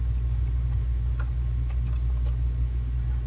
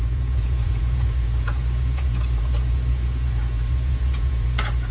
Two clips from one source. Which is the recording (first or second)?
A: first